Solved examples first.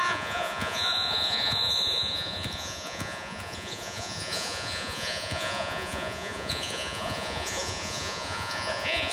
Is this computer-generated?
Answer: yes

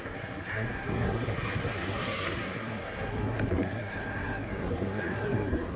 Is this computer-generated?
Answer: yes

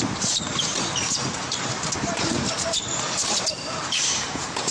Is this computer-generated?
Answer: yes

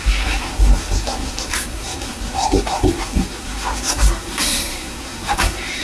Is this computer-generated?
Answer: yes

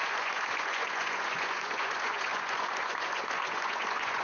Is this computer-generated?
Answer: yes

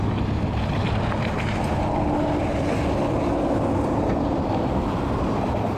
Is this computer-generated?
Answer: no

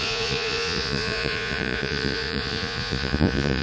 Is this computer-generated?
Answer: yes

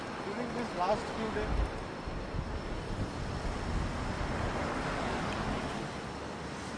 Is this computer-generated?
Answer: no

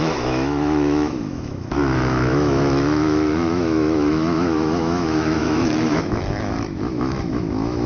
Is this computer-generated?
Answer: yes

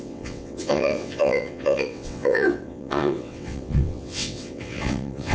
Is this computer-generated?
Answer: yes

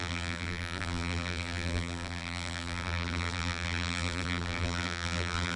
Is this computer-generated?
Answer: yes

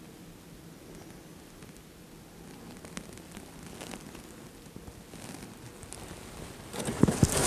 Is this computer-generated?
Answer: no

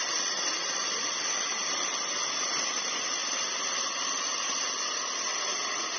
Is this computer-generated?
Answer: no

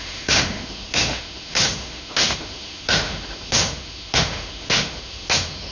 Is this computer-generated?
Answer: yes